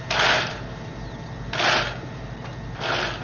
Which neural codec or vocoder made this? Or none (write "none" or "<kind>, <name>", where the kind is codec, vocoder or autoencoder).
none